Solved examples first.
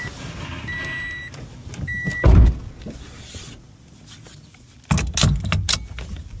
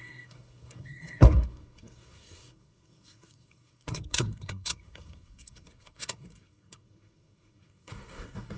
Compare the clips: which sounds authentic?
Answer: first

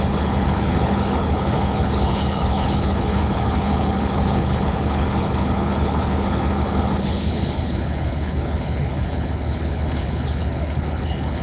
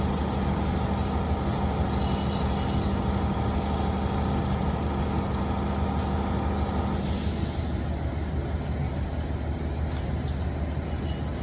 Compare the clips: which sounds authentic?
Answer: second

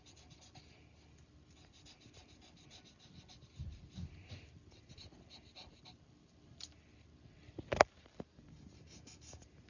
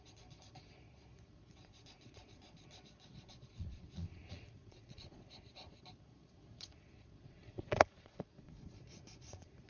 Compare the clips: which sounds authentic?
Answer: first